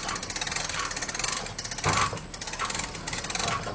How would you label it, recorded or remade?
recorded